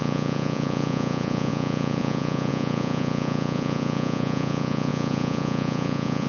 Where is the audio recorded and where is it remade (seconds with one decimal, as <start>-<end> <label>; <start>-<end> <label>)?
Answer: 0.0-6.3 remade